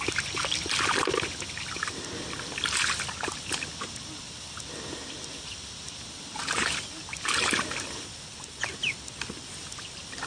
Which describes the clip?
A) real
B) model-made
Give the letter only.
A